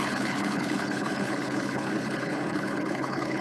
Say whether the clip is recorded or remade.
remade